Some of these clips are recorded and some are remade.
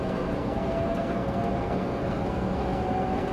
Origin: remade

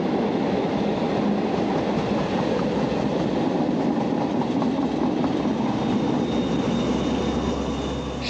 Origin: recorded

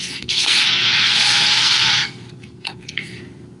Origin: remade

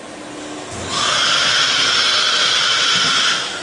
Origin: recorded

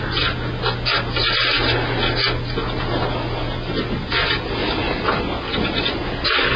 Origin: recorded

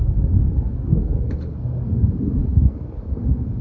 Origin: remade